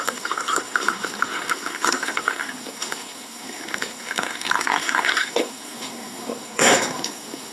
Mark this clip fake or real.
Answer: fake